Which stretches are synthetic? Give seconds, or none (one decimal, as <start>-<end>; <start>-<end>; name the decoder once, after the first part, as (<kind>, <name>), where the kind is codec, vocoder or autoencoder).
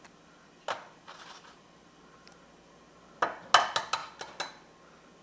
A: none